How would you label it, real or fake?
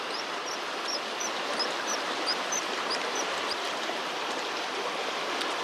fake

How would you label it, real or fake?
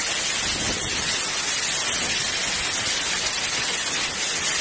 real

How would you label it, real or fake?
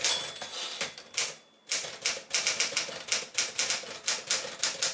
real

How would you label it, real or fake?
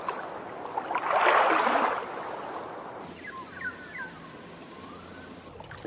real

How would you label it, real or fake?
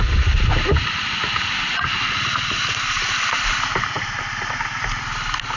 real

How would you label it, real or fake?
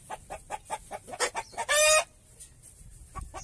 real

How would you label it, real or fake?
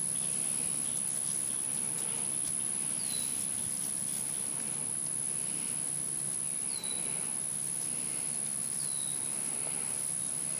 real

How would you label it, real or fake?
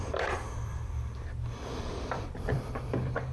fake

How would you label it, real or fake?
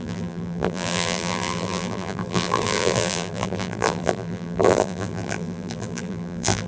fake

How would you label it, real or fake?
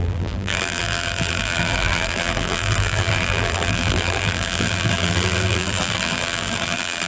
fake